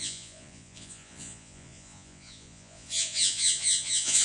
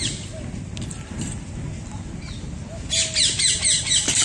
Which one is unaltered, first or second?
second